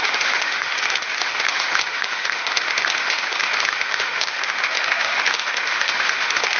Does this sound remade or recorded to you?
remade